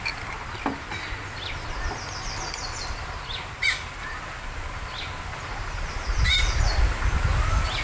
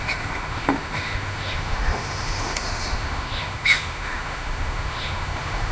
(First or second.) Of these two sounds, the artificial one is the second